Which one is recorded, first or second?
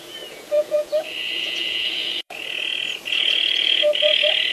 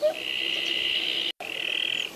second